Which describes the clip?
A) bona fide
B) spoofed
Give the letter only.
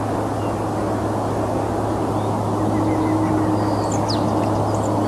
A